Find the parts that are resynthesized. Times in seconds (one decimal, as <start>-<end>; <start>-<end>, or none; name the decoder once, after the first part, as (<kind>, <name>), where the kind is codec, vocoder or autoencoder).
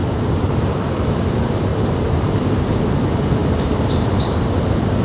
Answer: 0.0-0.7 (vocoder, BigVGAN v2); 1.7-2.3; 3.4-4.3